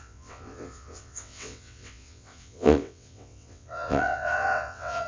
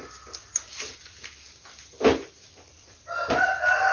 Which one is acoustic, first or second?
second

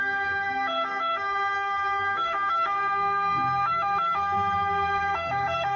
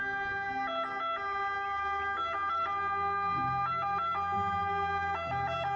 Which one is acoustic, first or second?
second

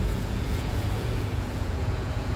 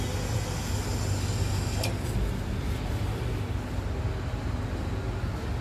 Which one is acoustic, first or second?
second